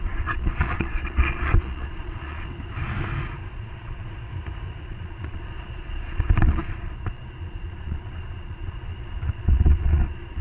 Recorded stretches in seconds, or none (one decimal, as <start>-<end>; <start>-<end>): 2.5-3.5; 4.3-4.8